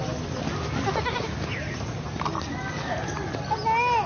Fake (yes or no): no